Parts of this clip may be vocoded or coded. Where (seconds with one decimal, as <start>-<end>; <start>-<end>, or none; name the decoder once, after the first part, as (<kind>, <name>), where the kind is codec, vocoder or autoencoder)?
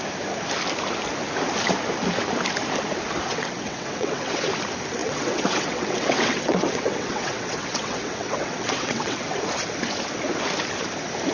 3.3-4.5 (vocoder, WaveNeXt); 5.0-9.4